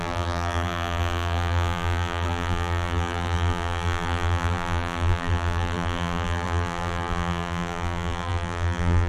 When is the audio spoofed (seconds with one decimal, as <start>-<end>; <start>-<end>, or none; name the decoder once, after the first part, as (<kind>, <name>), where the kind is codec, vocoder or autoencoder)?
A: 0.0-9.1 (vocoder, BigVGAN v2)